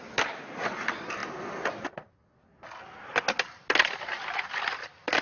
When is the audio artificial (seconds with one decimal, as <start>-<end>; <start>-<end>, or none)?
none